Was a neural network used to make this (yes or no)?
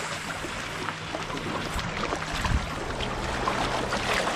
no